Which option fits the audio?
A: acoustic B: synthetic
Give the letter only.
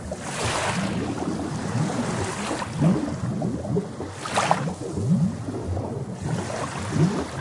A